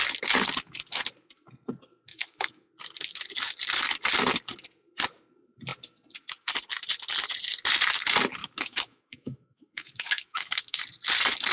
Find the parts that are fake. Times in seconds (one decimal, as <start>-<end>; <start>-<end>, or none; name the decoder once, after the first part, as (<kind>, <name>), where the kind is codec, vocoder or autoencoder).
2.1-2.7 (autoencoder, DAC-VAE); 8.4-10.8